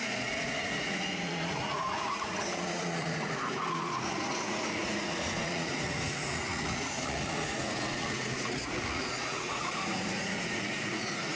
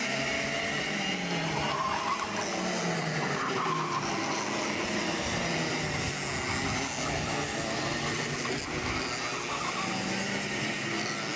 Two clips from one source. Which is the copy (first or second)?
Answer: first